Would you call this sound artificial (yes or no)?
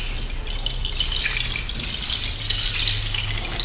no